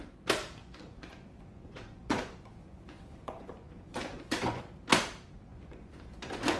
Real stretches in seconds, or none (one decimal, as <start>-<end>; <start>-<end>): 0.0-0.6; 4.6-5.5

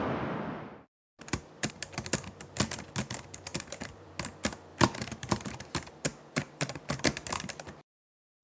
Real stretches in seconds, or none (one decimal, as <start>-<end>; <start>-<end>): 0.0-1.0; 1.7-3.5; 4.1-4.7; 6.9-8.4

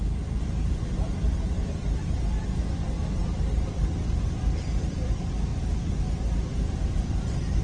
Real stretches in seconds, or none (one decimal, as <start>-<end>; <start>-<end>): 5.5-6.5

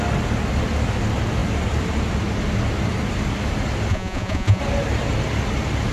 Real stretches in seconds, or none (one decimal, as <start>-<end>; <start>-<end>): 0.0-3.9; 4.6-5.9

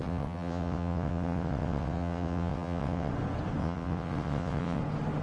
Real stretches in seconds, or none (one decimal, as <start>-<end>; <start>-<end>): 3.1-3.6; 4.8-5.2

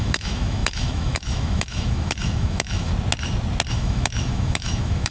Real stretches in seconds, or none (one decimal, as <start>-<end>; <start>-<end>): 2.9-3.7

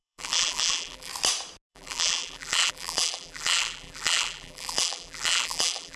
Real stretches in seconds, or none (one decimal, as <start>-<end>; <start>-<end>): 1.1-1.7

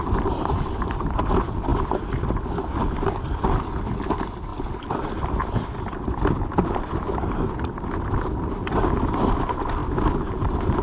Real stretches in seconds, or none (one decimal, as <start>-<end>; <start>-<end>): 0.0-10.8